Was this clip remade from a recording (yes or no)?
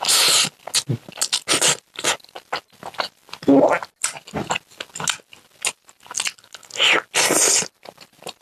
no